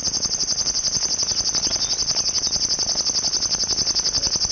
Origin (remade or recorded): recorded